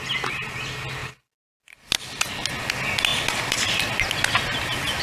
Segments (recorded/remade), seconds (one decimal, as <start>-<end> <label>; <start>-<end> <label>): 0.0-3.1 recorded; 3.1-3.9 remade; 3.9-5.0 recorded

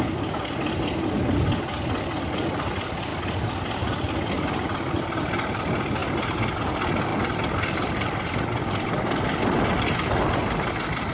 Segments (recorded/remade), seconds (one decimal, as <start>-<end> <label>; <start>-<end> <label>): 0.0-3.1 recorded; 3.1-4.1 remade; 4.1-7.1 recorded; 7.1-10.7 remade; 10.7-11.1 recorded